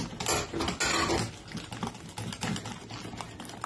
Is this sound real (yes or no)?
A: yes